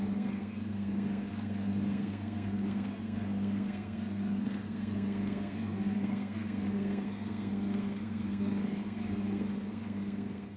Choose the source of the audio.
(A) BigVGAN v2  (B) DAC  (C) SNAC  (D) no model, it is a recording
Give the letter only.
C